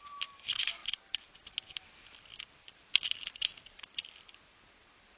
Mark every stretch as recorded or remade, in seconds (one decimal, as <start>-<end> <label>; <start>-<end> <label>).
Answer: 0.0-5.2 recorded